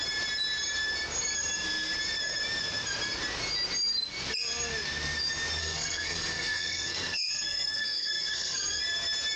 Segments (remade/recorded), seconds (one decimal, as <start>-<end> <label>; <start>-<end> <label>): 0.0-5.6 recorded; 5.6-8.8 remade; 8.8-9.4 recorded